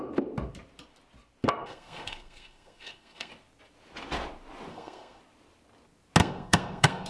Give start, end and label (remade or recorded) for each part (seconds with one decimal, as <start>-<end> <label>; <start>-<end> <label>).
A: 0.0-1.6 recorded; 1.6-3.3 remade; 3.3-4.7 recorded; 4.7-5.2 remade; 5.2-6.2 recorded; 6.2-7.1 remade